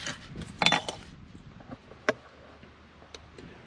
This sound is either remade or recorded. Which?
recorded